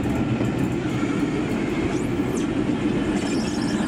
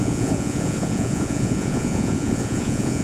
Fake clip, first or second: second